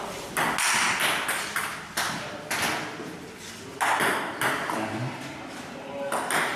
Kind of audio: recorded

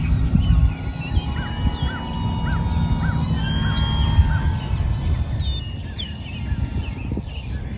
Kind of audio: recorded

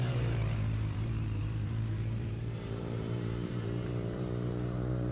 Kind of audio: remade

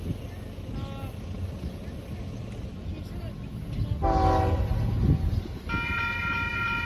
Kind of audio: recorded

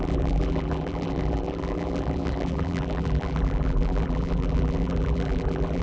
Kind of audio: remade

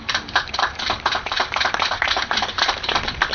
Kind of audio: remade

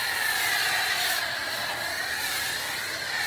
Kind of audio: recorded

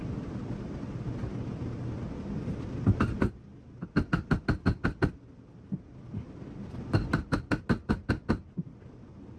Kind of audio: recorded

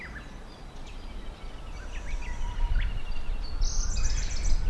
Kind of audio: remade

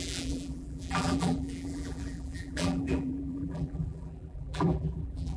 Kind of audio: remade